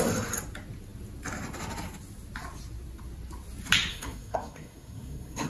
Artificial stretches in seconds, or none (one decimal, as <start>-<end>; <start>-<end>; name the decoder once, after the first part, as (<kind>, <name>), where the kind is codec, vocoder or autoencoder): 3.9-5.5 (codec, SNAC)